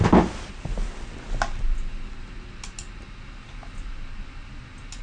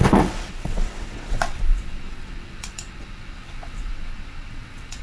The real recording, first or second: first